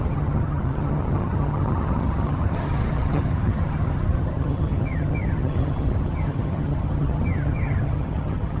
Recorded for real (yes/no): no